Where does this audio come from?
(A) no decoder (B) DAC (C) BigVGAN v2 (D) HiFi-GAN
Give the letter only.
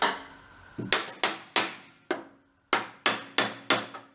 A